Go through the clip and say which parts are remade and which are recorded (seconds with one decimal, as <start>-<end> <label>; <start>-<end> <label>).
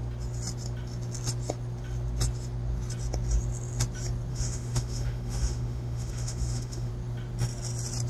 0.0-4.3 recorded; 4.3-6.9 remade; 6.9-8.1 recorded